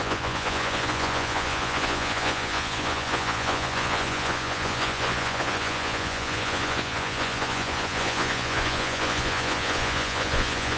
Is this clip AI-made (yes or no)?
yes